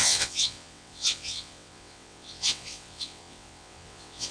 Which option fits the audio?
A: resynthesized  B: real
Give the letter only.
A